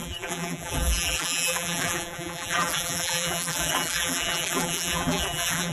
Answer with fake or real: fake